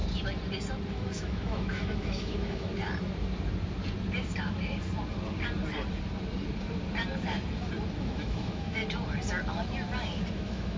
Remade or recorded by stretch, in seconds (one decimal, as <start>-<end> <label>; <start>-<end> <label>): 0.0-0.9 recorded; 0.9-2.7 remade; 2.7-8.0 recorded; 8.0-8.8 remade; 8.8-10.3 recorded; 10.3-10.8 remade